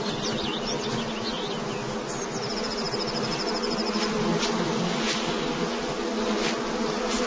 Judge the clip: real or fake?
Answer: real